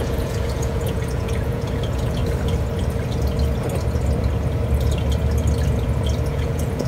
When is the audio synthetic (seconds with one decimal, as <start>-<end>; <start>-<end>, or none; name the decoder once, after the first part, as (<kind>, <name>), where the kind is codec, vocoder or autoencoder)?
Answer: 0.0-2.2 (vocoder, Vocos); 6.3-6.9